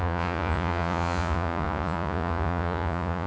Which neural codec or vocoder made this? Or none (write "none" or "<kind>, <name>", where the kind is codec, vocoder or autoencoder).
vocoder, Vocos